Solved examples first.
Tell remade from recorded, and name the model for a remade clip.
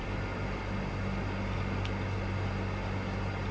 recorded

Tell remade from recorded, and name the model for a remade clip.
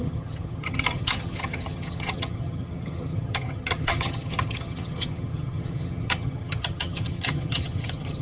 remade, vocoder, HiFi-GAN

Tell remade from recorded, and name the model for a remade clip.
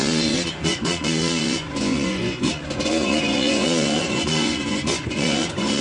remade, vocoder, Vocos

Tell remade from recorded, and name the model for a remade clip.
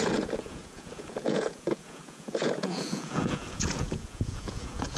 remade, vocoder, Vocos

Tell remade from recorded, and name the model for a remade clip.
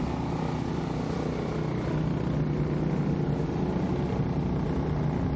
recorded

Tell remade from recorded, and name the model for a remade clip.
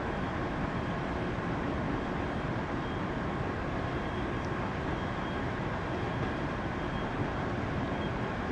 remade, vocoder, BigVGAN v2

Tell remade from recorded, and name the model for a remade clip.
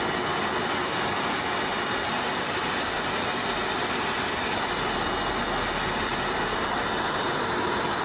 recorded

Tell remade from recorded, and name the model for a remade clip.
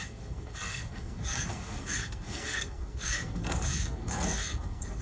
remade, codec, SNAC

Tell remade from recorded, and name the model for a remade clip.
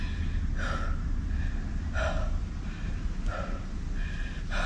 recorded